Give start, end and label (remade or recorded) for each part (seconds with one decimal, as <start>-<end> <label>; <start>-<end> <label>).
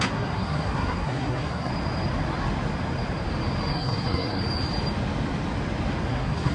0.0-1.7 remade; 1.7-3.7 recorded; 3.7-4.4 remade; 4.4-6.1 recorded; 6.1-6.5 remade